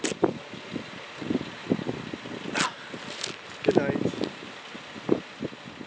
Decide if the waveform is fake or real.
real